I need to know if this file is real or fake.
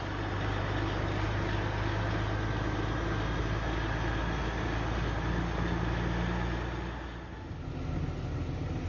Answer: real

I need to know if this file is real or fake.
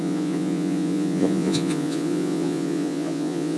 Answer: fake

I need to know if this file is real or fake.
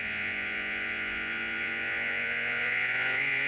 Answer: fake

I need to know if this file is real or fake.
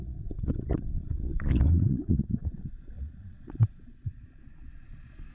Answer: fake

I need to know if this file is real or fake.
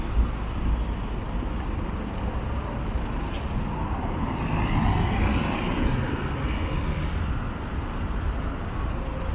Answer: real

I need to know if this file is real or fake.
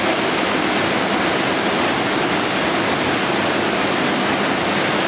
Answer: real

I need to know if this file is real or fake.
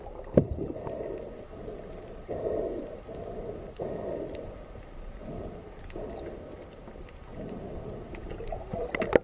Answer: real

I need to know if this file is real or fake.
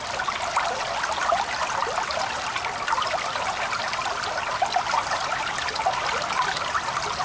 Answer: real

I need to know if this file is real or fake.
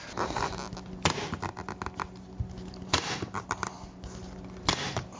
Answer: real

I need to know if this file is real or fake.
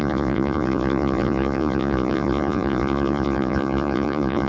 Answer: fake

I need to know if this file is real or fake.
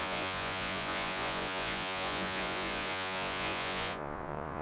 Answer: fake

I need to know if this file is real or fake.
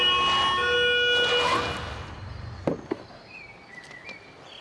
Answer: real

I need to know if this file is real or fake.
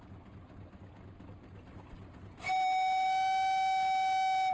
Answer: real